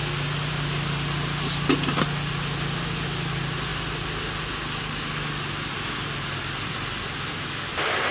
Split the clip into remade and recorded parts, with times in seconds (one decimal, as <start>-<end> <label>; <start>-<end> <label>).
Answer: 0.0-8.1 recorded